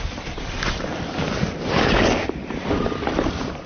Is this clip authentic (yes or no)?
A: yes